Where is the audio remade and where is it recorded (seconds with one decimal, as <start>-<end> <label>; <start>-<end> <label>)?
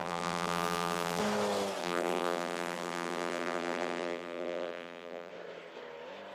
0.0-1.2 remade; 1.2-1.8 recorded; 1.8-5.3 remade; 5.3-6.3 recorded